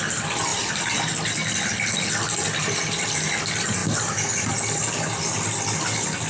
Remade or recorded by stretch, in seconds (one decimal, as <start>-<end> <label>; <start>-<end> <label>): 0.0-6.3 recorded